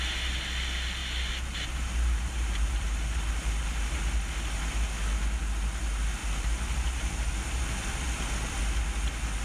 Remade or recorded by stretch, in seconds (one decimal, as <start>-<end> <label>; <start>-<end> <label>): 0.0-1.0 recorded; 1.0-4.0 remade; 4.0-6.2 recorded; 6.2-7.3 remade; 7.3-9.4 recorded